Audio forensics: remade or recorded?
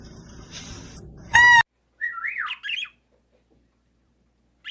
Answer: recorded